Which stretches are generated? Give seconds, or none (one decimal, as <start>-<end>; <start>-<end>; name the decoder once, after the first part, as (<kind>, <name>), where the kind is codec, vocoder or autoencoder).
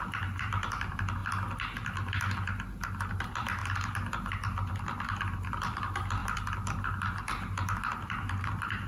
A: 0.0-1.2 (vocoder, BigVGAN v2); 3.1-3.6; 4.7-6.2; 7.7-8.9